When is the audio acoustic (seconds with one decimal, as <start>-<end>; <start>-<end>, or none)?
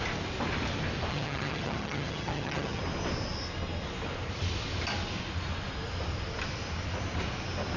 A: 0.0-1.1; 2.8-7.8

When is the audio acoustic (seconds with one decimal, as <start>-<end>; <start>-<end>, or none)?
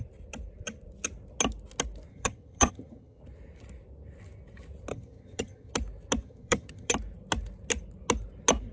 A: 0.0-2.1; 3.2-4.9; 5.7-6.2; 6.9-8.7